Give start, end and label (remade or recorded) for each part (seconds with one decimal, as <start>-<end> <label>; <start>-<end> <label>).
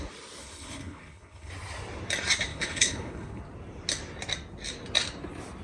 0.0-0.4 recorded; 0.4-1.5 remade; 1.5-2.5 recorded; 2.5-3.4 remade; 3.4-5.6 recorded